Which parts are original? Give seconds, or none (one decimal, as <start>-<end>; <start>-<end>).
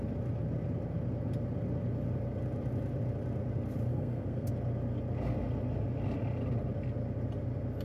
0.0-3.9; 4.5-7.8